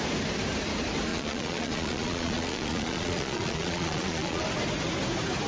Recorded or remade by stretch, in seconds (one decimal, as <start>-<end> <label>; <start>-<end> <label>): 0.0-1.1 recorded; 1.1-4.4 remade; 4.4-5.5 recorded

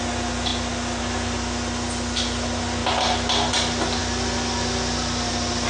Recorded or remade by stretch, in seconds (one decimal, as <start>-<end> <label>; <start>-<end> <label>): 0.0-5.7 recorded

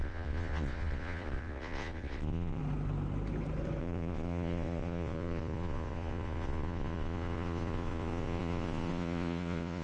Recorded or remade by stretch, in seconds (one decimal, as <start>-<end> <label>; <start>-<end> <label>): 0.0-2.6 remade; 2.6-3.8 recorded; 3.8-9.8 remade

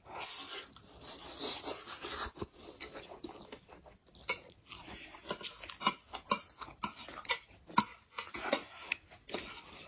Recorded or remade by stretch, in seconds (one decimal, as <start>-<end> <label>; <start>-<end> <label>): 0.0-4.2 recorded; 4.2-4.7 remade; 4.7-7.9 recorded; 7.9-9.5 remade; 9.5-9.9 recorded

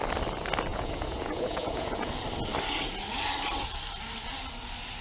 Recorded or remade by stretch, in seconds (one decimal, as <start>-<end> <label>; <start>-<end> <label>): 0.0-0.7 recorded; 0.7-2.1 remade; 2.1-5.0 recorded